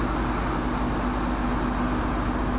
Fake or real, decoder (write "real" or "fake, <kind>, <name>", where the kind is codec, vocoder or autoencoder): real